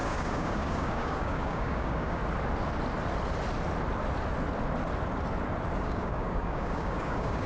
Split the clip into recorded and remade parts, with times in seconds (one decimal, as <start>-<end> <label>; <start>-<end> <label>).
0.0-2.2 remade; 2.2-5.8 recorded; 5.8-7.5 remade